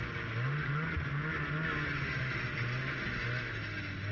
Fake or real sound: real